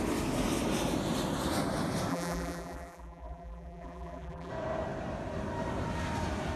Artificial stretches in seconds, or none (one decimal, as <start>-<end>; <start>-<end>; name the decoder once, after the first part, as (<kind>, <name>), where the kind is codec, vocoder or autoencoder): 2.1-4.5 (vocoder, BigVGAN v2)